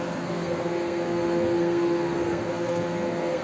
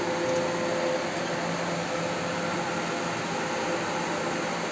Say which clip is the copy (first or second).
first